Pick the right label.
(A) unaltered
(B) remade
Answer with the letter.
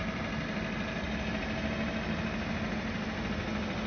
A